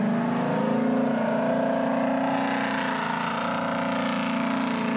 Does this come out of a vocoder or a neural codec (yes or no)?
no